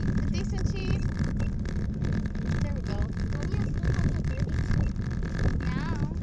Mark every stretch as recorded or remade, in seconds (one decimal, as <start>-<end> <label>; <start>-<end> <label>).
0.0-0.8 recorded; 0.8-1.3 remade; 1.3-2.7 recorded; 2.7-4.3 remade; 4.3-6.2 recorded